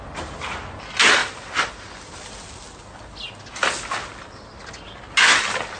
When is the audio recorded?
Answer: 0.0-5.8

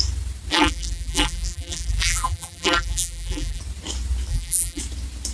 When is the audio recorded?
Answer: 0.0-0.5; 3.6-4.3; 4.8-5.3

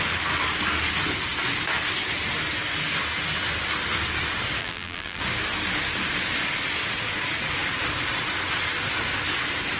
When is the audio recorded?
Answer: 0.0-4.6; 5.2-9.8

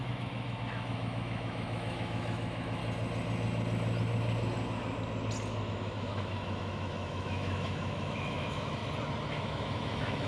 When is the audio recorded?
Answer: 2.8-5.7; 8.8-9.3

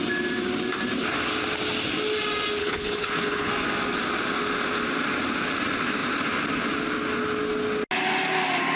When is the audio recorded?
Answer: 0.0-2.6; 3.5-8.8

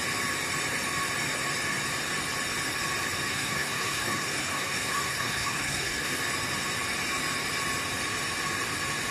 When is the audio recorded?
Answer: 0.0-3.3; 6.2-9.1

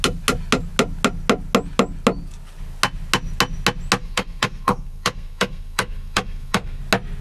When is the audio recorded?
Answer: 0.0-4.0; 6.8-7.2

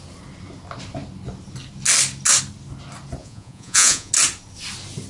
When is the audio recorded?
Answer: 0.0-3.2; 4.1-5.1